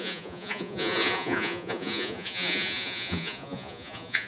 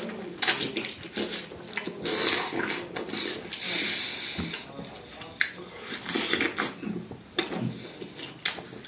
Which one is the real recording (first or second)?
second